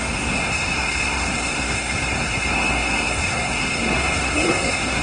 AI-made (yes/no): yes